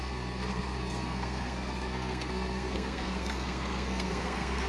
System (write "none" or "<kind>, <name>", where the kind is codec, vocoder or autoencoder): codec, SNAC